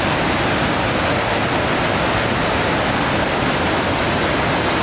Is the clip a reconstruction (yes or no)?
no